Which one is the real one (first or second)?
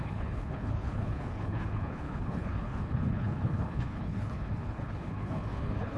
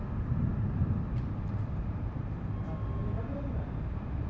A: second